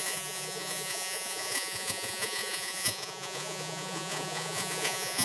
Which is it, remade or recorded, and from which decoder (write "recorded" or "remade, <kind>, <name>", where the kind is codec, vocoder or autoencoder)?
remade, vocoder, Vocos